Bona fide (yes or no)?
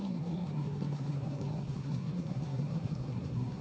no